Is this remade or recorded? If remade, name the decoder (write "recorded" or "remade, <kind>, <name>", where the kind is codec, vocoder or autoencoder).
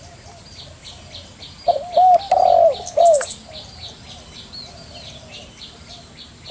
recorded